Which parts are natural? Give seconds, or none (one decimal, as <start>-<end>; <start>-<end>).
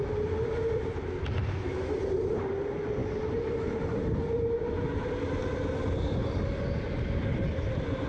0.0-8.1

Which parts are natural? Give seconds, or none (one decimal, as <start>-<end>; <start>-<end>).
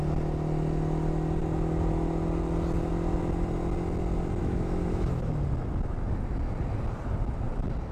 0.0-4.4; 5.3-7.9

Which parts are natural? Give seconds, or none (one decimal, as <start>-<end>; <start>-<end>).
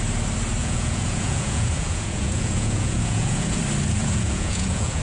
0.0-0.6; 3.6-4.0